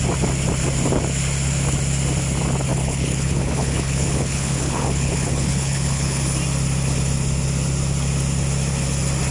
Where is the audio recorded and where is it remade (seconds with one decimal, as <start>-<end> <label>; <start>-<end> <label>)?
0.0-2.7 recorded; 2.7-6.2 remade; 6.2-9.3 recorded